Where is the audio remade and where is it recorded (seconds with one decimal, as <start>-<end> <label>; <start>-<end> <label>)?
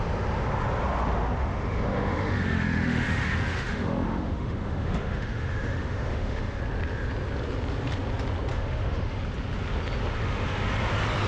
0.0-1.4 recorded; 1.4-6.6 remade; 6.6-8.5 recorded; 8.5-9.2 remade; 9.2-10.2 recorded; 10.2-10.7 remade; 10.7-11.3 recorded